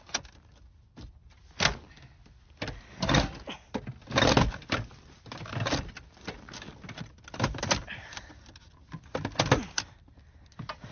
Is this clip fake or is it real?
real